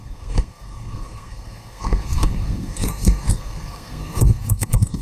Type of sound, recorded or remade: remade